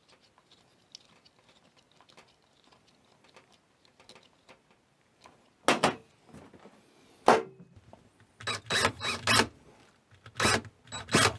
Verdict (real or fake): real